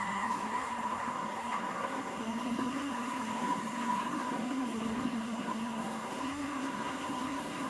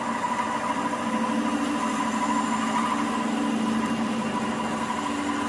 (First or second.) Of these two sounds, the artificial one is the first